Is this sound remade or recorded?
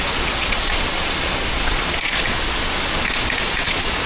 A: remade